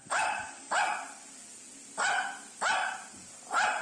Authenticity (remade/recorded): recorded